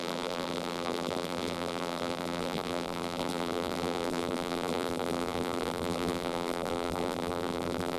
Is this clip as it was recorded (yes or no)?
no